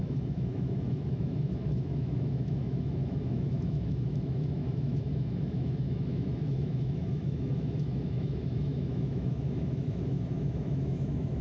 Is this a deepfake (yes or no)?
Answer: yes